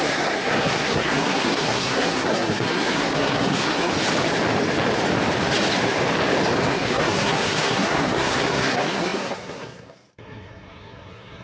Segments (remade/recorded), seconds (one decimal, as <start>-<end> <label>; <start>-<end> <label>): 0.0-3.9 remade; 3.9-6.7 recorded; 6.7-11.4 remade